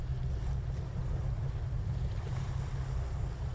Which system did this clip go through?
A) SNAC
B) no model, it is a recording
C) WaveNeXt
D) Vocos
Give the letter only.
B